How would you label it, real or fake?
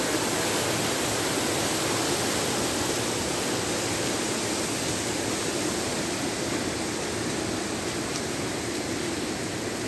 real